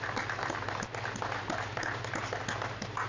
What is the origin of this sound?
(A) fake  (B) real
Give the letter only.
B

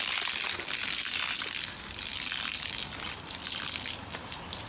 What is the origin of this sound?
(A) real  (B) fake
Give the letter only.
A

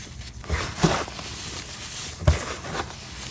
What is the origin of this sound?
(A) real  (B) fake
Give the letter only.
A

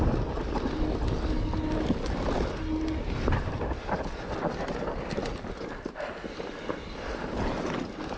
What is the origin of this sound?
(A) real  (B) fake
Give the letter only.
A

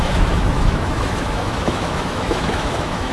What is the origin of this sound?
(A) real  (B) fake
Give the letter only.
B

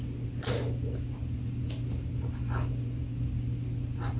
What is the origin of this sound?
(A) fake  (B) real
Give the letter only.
B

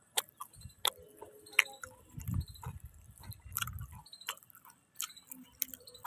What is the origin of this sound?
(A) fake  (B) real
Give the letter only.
B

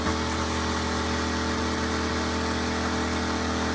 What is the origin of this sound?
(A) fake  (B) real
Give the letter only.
B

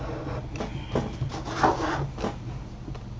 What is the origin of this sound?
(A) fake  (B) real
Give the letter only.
B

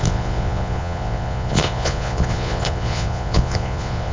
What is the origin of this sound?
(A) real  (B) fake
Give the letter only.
B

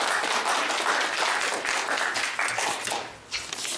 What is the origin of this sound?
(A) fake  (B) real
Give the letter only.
B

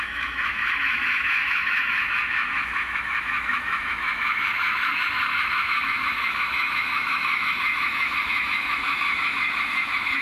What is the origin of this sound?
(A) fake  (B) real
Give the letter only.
A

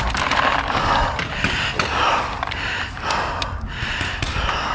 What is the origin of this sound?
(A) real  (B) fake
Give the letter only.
A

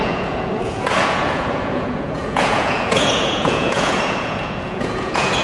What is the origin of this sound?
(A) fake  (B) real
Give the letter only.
A